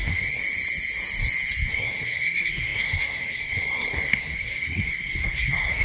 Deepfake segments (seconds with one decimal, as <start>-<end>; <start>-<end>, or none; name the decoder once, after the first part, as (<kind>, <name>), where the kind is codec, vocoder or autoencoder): 0.0-0.4 (codec, SNAC); 1.7-5.8